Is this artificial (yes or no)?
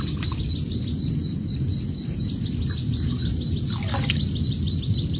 no